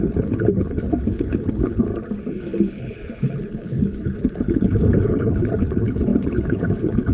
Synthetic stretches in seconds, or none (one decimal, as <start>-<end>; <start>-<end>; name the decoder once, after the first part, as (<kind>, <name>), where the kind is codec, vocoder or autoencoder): 0.0-1.9 (codec, HILCodec); 2.4-7.1